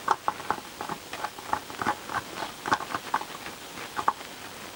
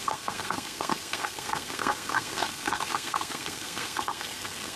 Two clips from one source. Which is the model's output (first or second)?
second